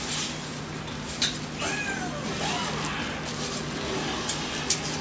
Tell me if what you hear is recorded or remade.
recorded